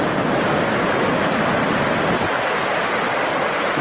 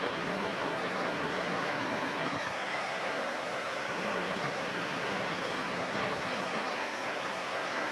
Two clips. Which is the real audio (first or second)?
first